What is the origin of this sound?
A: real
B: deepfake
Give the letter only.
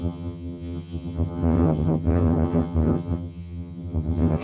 B